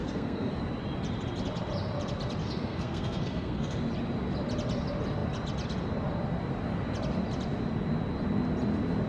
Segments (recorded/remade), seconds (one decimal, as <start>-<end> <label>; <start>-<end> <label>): 0.0-0.6 remade; 0.6-2.4 recorded; 2.4-3.8 remade; 3.8-9.1 recorded